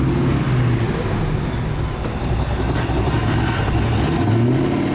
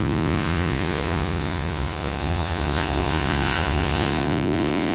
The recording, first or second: first